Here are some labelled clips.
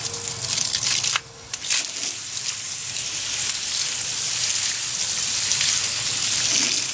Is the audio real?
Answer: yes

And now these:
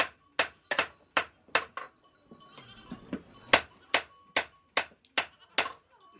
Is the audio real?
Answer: yes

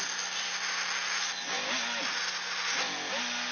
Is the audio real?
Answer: yes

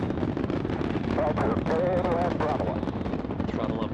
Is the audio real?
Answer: yes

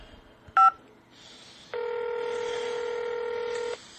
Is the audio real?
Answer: yes